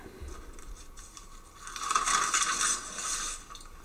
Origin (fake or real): real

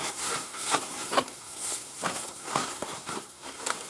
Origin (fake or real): fake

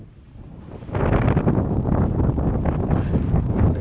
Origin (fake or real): real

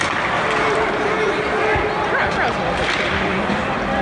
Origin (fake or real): real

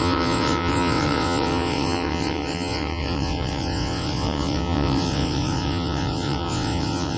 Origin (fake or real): fake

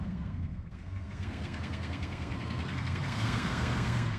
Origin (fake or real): fake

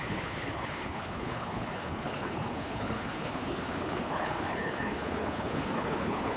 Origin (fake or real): fake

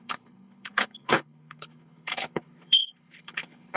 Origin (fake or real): fake